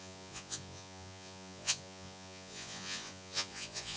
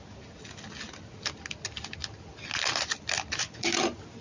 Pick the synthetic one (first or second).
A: first